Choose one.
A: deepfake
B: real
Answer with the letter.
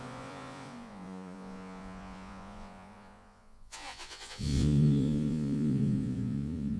A